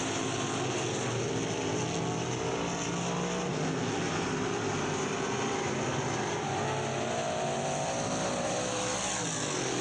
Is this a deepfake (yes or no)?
no